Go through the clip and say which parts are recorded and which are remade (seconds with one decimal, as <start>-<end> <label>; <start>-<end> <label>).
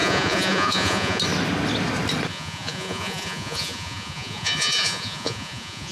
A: 0.0-1.2 remade; 1.2-2.3 recorded; 2.3-5.9 remade